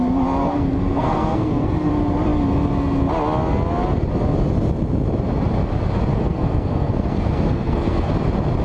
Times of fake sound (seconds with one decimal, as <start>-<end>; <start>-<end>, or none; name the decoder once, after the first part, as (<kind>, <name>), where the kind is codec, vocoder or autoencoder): 0.4-1.9 (codec, SNAC); 6.1-8.1